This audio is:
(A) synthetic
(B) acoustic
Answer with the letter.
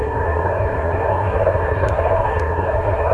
A